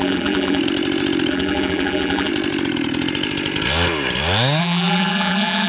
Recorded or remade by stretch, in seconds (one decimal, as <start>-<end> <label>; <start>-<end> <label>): 0.0-0.6 remade; 0.6-1.3 recorded; 1.3-2.3 remade; 2.3-4.6 recorded; 4.6-5.7 remade